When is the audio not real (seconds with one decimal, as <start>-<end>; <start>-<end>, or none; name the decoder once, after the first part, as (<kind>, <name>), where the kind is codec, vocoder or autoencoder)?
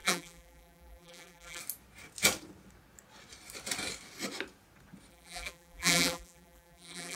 0.0-1.6 (vocoder, BigVGAN v2); 5.1-7.2